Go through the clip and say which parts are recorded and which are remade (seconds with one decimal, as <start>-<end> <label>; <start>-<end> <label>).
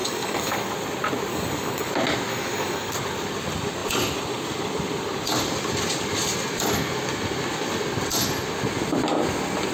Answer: 0.0-0.7 remade; 0.7-1.3 recorded; 1.3-1.9 remade; 1.9-2.3 recorded; 2.3-2.9 remade; 2.9-9.7 recorded